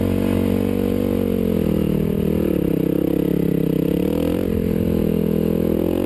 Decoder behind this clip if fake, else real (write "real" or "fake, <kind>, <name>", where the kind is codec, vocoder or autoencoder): real